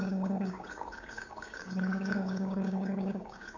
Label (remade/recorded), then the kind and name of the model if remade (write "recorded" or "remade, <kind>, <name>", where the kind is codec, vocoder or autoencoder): remade, codec, DAC